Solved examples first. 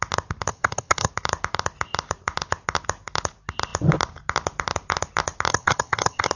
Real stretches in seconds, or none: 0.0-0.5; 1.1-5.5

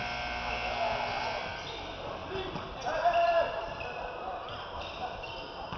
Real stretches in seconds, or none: 0.0-5.8

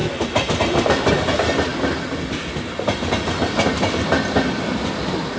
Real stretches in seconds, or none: 0.0-5.4

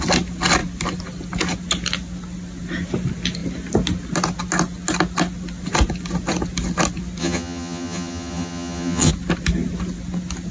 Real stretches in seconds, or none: 0.0-7.2; 9.1-10.5